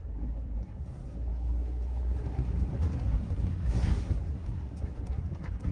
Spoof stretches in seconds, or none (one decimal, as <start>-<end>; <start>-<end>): 0.0-5.7